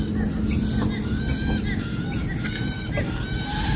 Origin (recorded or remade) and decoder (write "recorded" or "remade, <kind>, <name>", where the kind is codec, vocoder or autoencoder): recorded